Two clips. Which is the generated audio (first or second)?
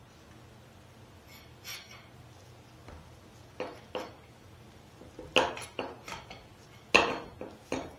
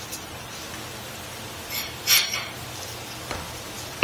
second